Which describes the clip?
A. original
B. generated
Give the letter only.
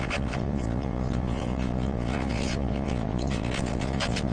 B